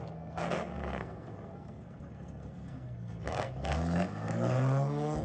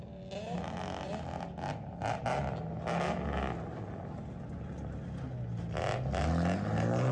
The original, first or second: second